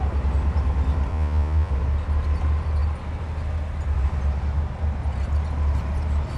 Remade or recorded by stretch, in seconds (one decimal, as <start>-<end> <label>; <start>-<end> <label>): 0.0-1.1 recorded; 1.1-1.7 remade; 1.7-6.4 recorded